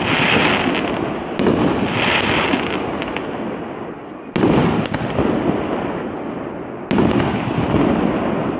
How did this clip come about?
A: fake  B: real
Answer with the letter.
B